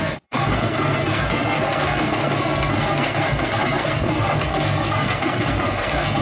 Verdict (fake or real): fake